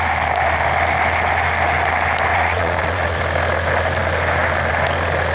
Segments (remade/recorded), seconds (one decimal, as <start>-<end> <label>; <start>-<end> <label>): 0.0-2.3 recorded; 2.3-3.2 remade; 3.2-5.3 recorded